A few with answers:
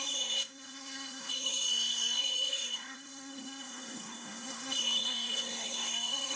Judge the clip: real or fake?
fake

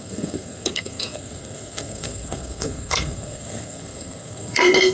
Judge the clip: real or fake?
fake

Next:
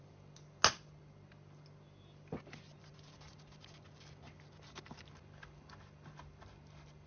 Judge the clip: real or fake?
real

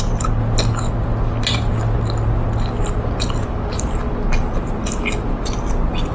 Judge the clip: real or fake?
real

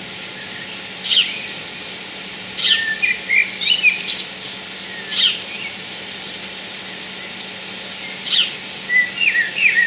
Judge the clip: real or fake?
real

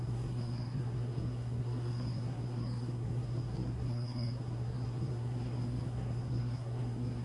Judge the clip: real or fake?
fake